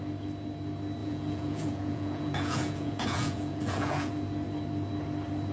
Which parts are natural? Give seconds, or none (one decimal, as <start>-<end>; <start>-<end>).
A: 0.0-1.0; 4.1-5.5